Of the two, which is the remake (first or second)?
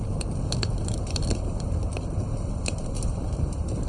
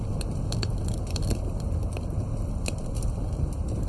first